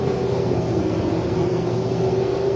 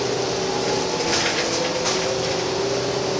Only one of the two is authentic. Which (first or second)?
second